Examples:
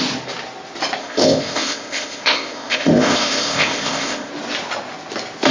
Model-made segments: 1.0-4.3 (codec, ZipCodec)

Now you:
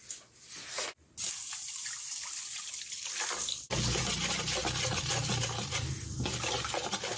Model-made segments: none